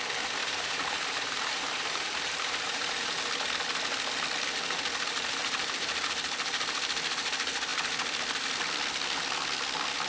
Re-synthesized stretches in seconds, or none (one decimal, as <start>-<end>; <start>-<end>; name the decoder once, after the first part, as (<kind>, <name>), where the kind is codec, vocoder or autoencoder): 0.4-3.2 (vocoder, BigVGAN v2); 5.4-6.1